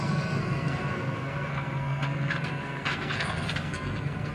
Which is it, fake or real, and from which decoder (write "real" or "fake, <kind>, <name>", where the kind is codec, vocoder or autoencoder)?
fake, codec, SNAC